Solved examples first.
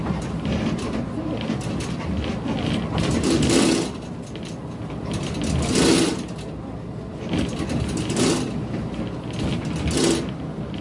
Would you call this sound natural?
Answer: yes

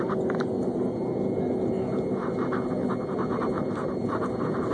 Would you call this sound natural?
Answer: yes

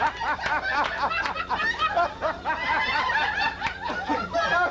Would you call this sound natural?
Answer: yes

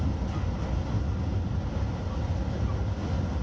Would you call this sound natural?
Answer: yes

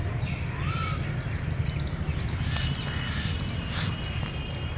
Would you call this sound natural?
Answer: yes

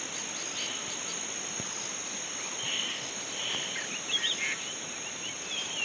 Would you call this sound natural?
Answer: yes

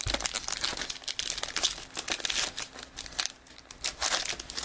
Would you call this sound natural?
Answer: yes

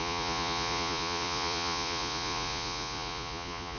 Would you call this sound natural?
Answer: no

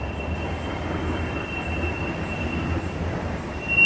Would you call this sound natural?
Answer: yes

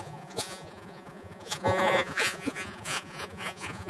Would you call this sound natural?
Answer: no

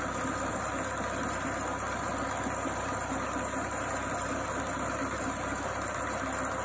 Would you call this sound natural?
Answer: yes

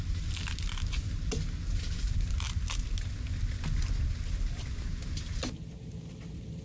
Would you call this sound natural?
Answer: yes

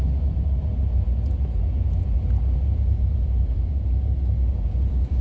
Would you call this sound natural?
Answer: no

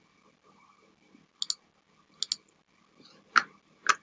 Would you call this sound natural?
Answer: yes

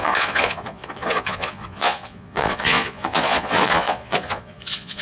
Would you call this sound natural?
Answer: no